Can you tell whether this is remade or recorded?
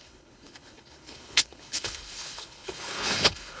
remade